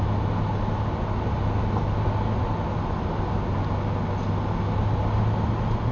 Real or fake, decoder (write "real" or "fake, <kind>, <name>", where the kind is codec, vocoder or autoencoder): real